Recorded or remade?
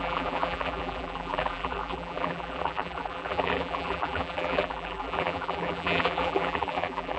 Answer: remade